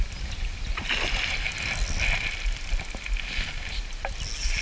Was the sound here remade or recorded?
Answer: recorded